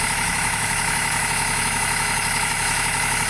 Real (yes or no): no